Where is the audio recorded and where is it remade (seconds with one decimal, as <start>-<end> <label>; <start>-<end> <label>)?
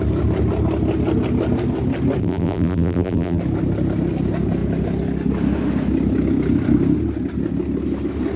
0.0-2.2 recorded; 2.2-3.4 remade; 3.4-8.4 recorded